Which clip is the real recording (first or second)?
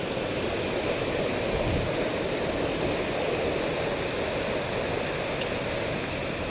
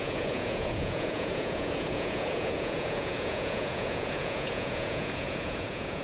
first